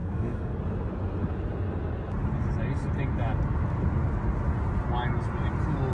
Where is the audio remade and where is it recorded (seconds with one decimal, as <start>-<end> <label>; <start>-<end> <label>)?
0.0-0.6 remade; 0.6-5.9 recorded

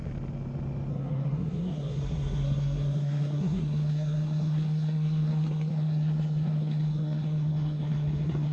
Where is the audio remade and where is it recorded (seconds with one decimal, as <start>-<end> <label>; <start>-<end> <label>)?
0.0-0.9 recorded; 0.9-8.5 remade

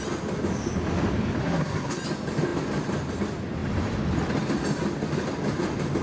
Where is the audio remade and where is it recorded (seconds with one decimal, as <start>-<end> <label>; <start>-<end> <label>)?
0.0-1.4 recorded; 1.4-2.0 remade; 2.0-6.0 recorded

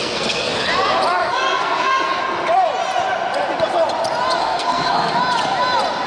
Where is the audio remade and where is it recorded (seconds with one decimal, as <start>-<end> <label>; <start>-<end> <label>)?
0.0-0.7 remade; 0.7-1.2 recorded; 1.2-2.2 remade; 2.2-4.4 recorded; 4.4-5.1 remade; 5.1-6.1 recorded

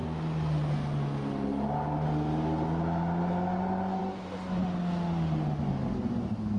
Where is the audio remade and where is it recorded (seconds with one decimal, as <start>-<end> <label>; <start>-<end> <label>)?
0.0-6.6 recorded

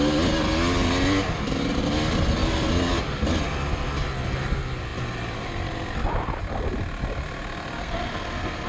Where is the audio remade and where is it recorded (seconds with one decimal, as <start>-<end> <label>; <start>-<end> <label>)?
0.0-7.8 recorded; 7.8-8.7 remade